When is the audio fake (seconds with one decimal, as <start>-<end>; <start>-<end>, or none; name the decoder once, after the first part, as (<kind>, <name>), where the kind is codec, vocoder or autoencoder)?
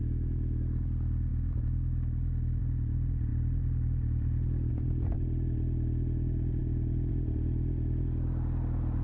none